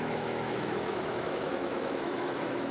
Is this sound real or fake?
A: fake